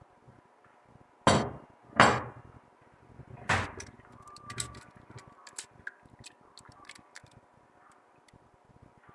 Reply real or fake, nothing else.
real